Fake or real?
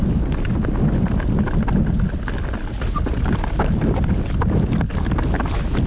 real